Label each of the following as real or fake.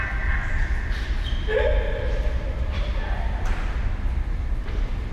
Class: real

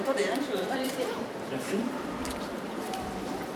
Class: fake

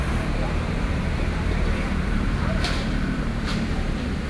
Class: fake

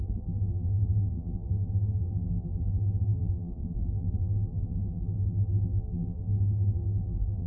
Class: fake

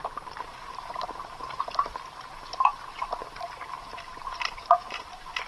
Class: fake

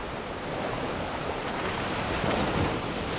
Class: fake